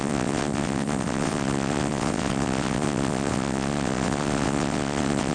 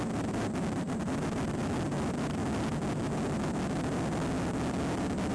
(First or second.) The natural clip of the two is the second